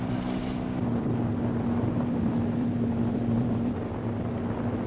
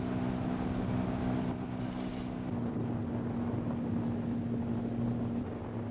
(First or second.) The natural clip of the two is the second